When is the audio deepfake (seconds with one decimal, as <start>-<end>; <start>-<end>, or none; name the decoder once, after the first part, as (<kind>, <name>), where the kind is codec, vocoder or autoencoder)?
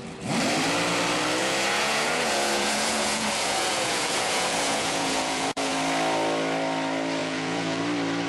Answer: 1.4-5.7 (vocoder, Vocos); 7.2-7.8